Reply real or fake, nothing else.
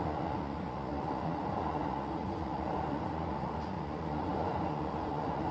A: fake